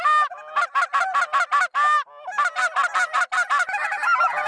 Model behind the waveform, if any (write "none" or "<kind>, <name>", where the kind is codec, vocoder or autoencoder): none